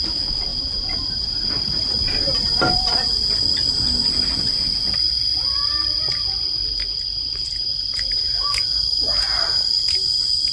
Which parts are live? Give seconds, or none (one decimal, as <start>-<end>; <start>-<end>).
0.0-0.5; 3.1-7.1; 9.7-10.5